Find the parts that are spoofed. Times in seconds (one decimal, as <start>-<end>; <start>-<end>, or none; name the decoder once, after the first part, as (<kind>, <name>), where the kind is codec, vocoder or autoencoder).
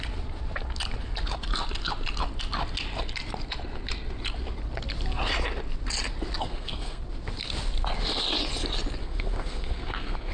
6.4-7.0 (codec, SNAC); 9.0-10.3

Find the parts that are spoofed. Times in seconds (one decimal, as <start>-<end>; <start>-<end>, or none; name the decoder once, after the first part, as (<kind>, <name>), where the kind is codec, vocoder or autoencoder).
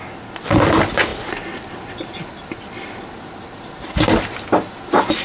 none